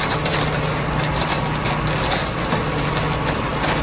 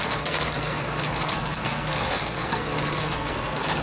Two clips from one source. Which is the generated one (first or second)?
second